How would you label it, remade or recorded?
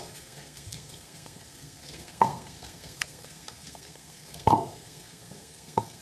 remade